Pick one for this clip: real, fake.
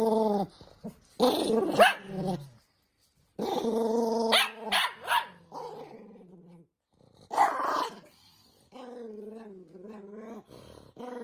real